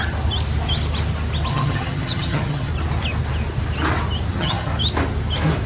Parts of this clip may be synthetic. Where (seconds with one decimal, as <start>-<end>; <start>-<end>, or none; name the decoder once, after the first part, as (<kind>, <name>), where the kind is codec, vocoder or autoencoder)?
1.5-2.7 (vocoder, HiFi-GAN); 4.3-4.7